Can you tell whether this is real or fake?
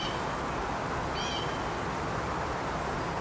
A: real